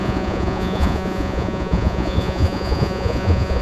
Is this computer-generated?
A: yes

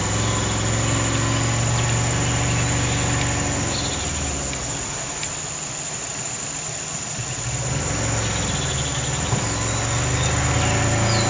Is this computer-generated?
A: no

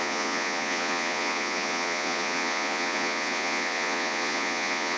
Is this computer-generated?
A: yes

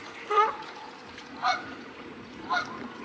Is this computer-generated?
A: yes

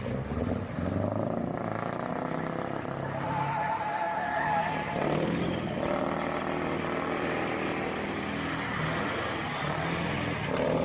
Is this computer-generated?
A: no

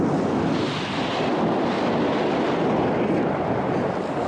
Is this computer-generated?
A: no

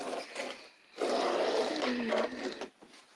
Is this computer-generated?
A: no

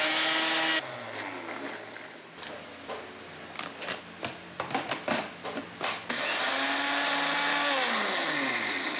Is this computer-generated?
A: no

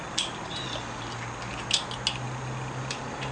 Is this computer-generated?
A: no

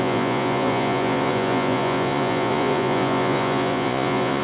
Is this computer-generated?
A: yes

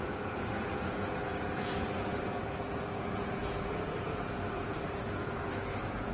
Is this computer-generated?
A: yes